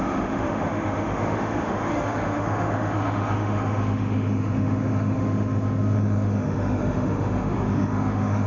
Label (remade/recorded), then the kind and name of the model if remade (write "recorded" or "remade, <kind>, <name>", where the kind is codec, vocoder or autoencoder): remade, autoencoder, DAC-VAE